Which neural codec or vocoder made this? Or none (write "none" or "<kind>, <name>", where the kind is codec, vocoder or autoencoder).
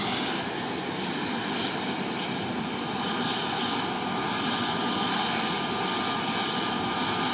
none